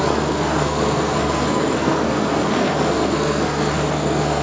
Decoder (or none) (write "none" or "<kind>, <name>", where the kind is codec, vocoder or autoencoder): codec, SNAC